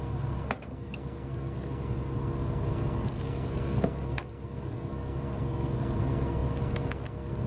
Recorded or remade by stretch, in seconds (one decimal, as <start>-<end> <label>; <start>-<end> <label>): 0.0-7.5 remade